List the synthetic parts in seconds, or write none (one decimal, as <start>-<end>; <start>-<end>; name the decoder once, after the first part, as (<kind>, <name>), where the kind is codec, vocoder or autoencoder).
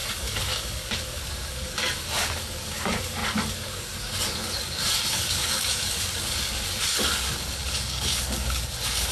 0.0-9.1 (codec, DAC)